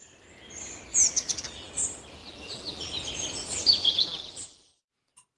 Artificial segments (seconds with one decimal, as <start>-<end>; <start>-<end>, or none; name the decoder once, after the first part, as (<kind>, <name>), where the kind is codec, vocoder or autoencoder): 0.9-1.7 (vocoder, BigVGAN v2); 2.2-2.9; 3.8-4.8